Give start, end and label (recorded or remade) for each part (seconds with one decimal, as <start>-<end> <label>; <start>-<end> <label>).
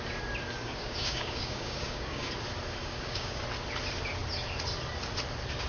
0.0-0.6 recorded; 0.6-2.3 remade; 2.3-2.8 recorded; 2.8-3.4 remade; 3.4-5.7 recorded